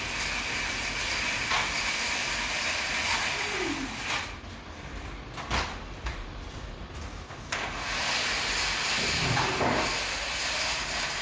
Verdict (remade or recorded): recorded